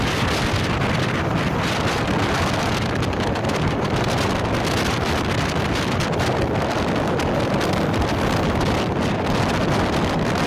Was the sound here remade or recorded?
remade